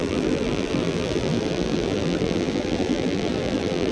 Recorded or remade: remade